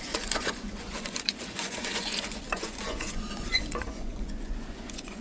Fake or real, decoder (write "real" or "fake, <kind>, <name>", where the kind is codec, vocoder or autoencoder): fake, vocoder, Vocos